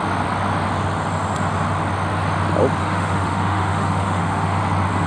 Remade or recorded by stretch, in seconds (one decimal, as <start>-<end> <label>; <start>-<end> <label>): 0.0-2.8 recorded; 2.8-4.6 remade; 4.6-5.1 recorded